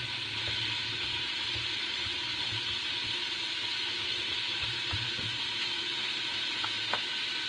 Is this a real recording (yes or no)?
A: yes